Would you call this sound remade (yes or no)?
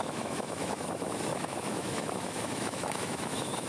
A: yes